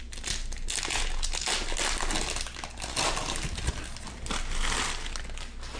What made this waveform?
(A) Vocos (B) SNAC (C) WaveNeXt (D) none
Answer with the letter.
D